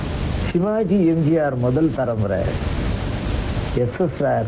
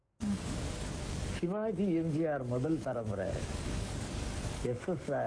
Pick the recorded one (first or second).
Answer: first